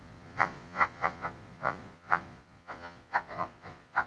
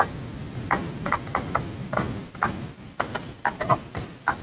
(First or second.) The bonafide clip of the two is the second